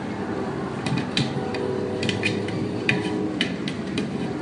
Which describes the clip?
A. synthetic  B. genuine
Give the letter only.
A